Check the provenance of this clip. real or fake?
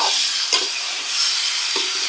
real